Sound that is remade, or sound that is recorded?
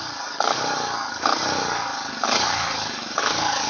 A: remade